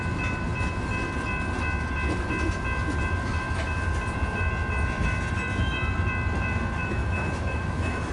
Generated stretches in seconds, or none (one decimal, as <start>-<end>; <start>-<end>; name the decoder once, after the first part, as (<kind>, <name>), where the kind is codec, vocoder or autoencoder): 6.8-8.1 (autoencoder, DAC-VAE)